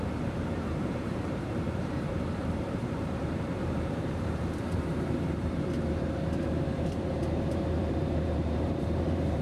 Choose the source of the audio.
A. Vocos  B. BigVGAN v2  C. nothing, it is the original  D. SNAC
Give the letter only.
B